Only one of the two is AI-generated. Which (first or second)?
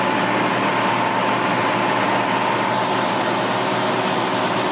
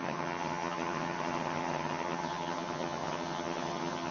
second